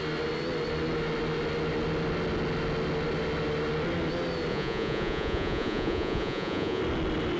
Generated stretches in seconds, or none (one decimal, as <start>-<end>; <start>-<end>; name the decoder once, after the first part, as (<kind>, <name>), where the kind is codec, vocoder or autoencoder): 4.5-6.8 (vocoder, Vocos)